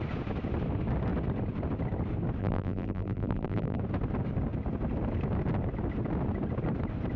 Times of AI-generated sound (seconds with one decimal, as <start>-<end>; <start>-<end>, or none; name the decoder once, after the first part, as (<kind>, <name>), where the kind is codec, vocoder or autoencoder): 2.4-3.8 (vocoder, BigVGAN v2)